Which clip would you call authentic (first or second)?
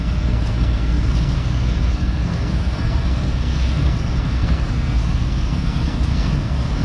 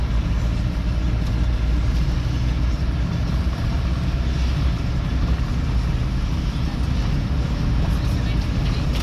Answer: second